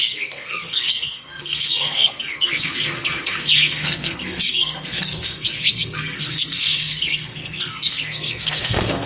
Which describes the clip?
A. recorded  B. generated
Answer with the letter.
B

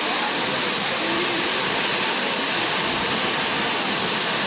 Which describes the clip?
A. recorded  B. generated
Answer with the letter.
A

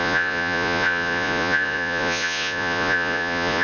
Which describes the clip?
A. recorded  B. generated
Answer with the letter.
B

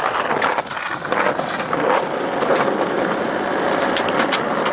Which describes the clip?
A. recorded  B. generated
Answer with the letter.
A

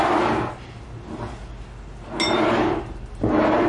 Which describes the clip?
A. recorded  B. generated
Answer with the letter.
A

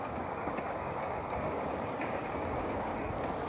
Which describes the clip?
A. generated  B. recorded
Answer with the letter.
A